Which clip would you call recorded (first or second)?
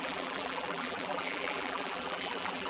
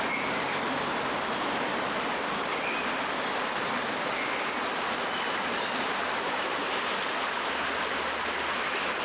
second